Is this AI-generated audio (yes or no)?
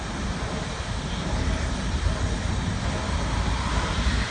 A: no